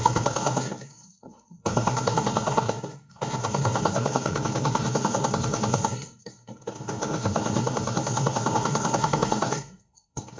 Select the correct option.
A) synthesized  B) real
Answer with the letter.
A